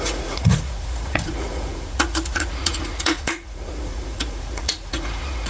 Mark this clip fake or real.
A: fake